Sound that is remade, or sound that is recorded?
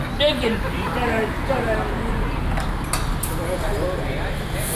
recorded